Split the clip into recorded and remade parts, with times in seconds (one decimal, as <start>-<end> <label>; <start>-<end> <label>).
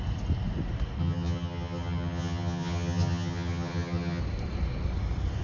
0.0-1.0 recorded; 1.0-4.2 remade; 4.2-5.4 recorded